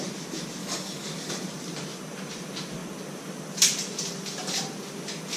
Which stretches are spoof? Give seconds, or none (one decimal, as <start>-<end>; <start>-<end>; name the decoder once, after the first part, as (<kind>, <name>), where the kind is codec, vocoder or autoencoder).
0.6-1.3 (codec, DAC)